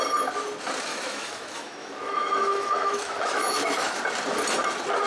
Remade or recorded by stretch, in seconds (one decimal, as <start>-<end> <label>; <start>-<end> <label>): 0.0-0.9 recorded; 0.9-4.0 remade; 4.0-5.1 recorded